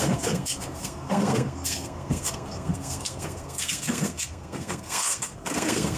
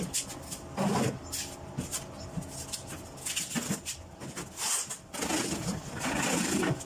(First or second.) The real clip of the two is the second